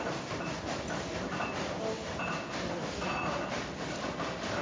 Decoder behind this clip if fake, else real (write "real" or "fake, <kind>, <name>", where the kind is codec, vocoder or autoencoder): real